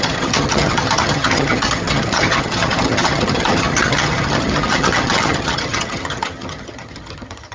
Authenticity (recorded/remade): remade